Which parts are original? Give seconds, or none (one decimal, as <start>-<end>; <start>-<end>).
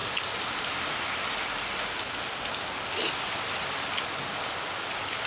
0.0-5.3